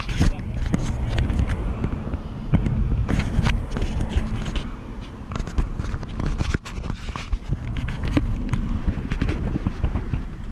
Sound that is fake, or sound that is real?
real